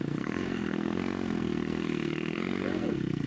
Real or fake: fake